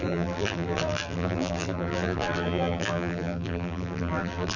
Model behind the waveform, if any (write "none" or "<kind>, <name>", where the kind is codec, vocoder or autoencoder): vocoder, BigVGAN v2